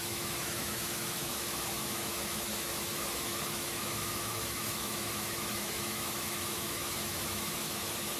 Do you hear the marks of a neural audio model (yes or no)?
yes